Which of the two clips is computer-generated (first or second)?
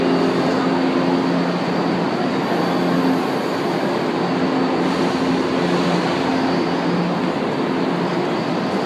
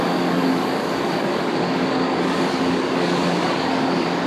second